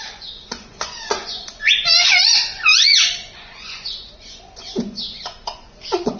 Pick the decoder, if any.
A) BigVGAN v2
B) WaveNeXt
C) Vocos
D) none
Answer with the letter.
C